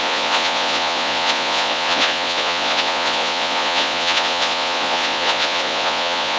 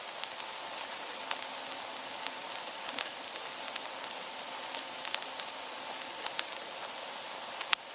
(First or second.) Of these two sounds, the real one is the second